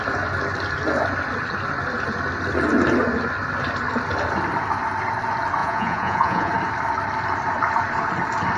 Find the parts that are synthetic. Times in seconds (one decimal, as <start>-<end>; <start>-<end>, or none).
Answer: 5.6-6.5